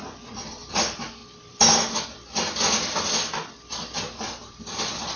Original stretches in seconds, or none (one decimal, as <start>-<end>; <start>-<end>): 1.2-4.0